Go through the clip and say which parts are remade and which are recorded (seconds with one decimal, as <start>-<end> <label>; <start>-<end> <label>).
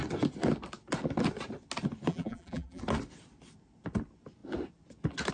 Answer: 0.0-2.1 recorded; 2.1-2.8 remade; 2.8-5.3 recorded